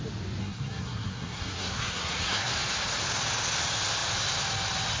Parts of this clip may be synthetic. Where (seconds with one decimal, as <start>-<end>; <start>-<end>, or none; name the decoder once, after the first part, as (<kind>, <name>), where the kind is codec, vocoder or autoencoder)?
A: 0.4-2.5 (codec, SNAC)